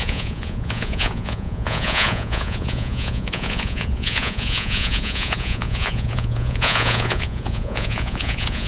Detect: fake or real fake